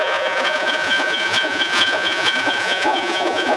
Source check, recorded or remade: remade